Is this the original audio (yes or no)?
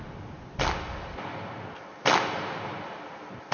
yes